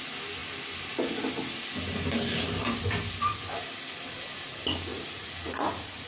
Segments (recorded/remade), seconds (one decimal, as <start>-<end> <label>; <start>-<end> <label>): 0.0-4.9 recorded; 4.9-6.1 remade